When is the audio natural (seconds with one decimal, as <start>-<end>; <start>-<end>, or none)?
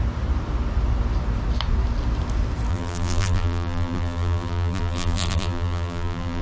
0.0-2.7